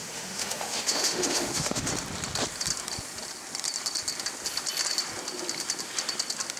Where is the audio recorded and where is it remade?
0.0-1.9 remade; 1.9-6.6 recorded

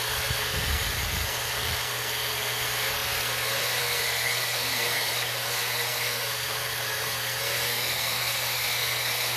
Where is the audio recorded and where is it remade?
0.0-9.4 remade

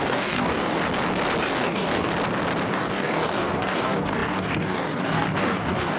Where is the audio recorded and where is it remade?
0.0-0.8 remade; 0.8-1.4 recorded; 1.4-2.1 remade; 2.1-2.7 recorded; 2.7-6.0 remade

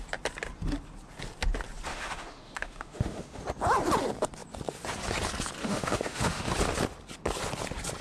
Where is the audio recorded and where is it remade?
0.0-1.9 recorded; 1.9-3.4 remade; 3.4-5.6 recorded; 5.6-6.5 remade; 6.5-8.0 recorded

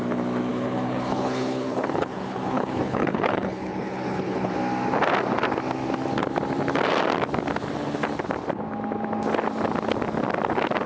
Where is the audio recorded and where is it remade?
0.0-0.5 recorded; 0.5-4.5 remade; 4.5-10.9 recorded

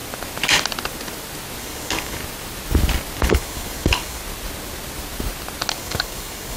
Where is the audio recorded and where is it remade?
0.0-1.6 recorded; 1.6-2.2 remade; 2.2-3.2 recorded; 3.2-4.2 remade; 4.2-5.7 recorded; 5.7-6.6 remade

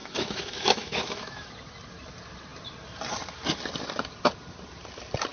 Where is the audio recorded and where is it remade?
0.0-1.5 remade; 1.5-5.3 recorded

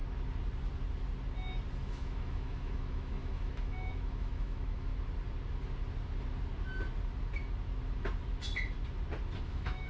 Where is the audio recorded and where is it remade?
0.0-1.8 recorded; 1.8-4.9 remade; 4.9-9.4 recorded; 9.4-9.9 remade